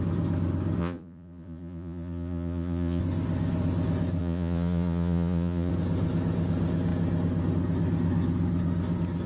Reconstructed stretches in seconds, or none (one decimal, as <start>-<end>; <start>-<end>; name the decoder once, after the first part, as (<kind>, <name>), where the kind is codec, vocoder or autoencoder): 0.8-3.0 (vocoder, Vocos); 4.2-5.7